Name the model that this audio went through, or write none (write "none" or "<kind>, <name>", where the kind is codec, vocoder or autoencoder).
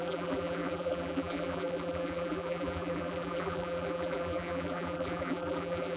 vocoder, BigVGAN v2